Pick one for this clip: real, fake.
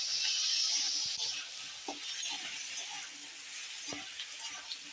real